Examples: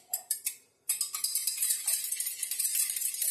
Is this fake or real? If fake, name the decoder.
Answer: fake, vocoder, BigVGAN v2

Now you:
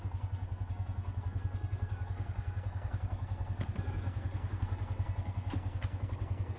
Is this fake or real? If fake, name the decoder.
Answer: fake, codec, SNAC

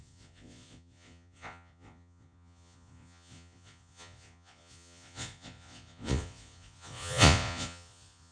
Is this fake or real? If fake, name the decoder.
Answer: fake, vocoder, Vocos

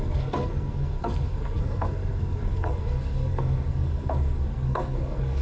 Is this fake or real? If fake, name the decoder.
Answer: fake, codec, SNAC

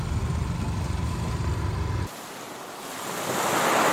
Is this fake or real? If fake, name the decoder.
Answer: real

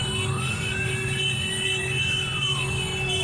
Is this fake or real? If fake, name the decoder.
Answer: fake, codec, DAC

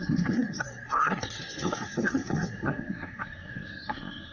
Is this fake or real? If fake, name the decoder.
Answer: fake, codec, SNAC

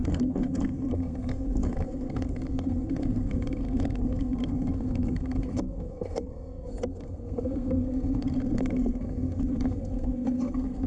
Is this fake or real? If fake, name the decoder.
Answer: fake, codec, SNAC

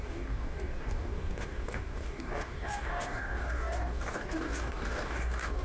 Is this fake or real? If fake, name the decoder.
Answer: fake, codec, DAC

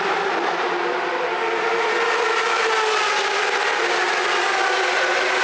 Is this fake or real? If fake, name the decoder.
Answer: real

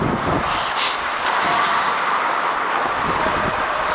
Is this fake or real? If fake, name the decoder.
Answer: real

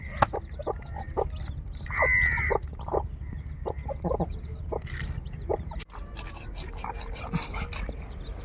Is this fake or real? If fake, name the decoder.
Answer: real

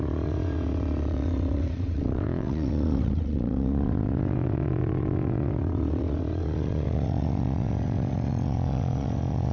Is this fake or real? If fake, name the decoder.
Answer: fake, vocoder, WaveNeXt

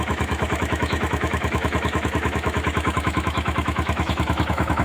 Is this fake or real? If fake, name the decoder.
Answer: fake, autoencoder, DAC-VAE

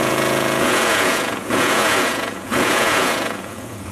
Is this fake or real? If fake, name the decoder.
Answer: fake, vocoder, Vocos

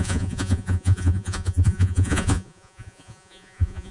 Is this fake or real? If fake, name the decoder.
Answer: fake, vocoder, Vocos